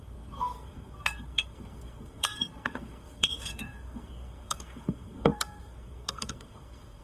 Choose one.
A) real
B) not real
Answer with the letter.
B